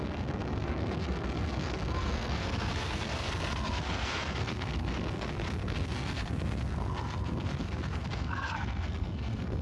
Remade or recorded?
remade